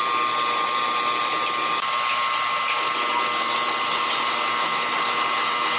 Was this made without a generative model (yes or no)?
yes